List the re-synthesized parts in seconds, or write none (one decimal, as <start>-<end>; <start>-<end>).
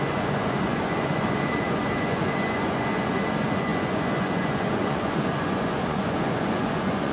0.0-7.1